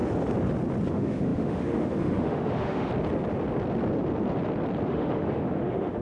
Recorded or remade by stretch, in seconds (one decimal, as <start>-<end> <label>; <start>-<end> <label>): 0.0-0.9 recorded; 0.9-2.9 remade; 2.9-4.9 recorded; 4.9-6.0 remade